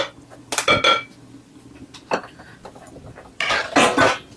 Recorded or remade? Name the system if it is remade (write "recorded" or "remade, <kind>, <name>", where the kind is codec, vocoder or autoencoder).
recorded